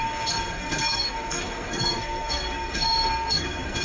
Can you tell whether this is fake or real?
fake